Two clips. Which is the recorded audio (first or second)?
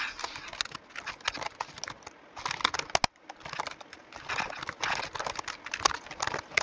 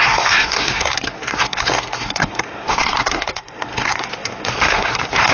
first